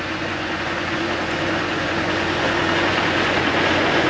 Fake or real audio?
fake